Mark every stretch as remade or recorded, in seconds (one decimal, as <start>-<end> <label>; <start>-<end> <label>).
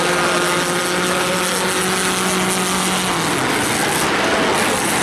0.0-5.0 recorded